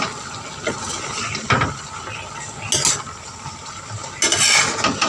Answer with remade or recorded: recorded